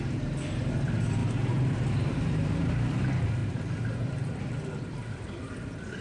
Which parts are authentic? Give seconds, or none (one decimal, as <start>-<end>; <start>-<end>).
0.0-1.2; 2.7-3.4; 4.4-6.0